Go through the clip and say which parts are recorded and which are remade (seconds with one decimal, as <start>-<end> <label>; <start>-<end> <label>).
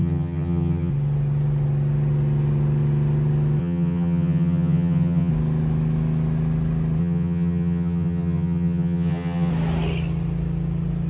0.0-0.9 remade; 0.9-3.6 recorded; 3.6-5.3 remade; 5.3-7.0 recorded; 7.0-9.5 remade; 9.5-11.1 recorded